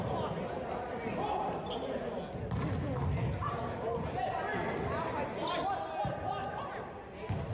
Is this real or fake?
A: real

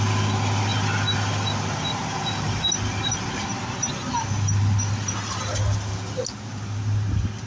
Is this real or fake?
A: real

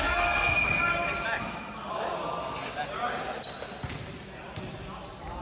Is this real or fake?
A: real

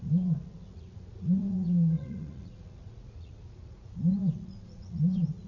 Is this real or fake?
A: fake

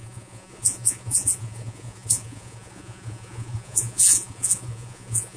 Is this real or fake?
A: fake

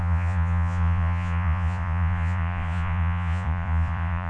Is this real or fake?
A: fake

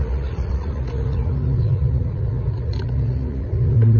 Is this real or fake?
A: fake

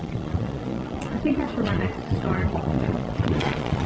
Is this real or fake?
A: fake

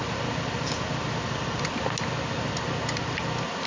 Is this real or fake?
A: real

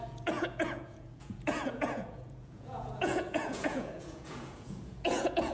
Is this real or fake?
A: fake